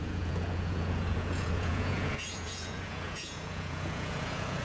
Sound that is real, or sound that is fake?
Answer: fake